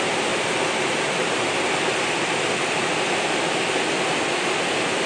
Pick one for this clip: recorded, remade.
recorded